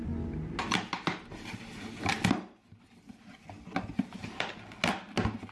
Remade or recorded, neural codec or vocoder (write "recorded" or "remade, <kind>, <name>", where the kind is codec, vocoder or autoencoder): recorded